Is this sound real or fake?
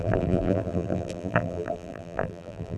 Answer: fake